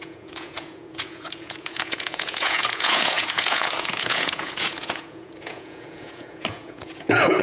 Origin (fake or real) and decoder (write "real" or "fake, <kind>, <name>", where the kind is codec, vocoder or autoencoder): fake, vocoder, Vocos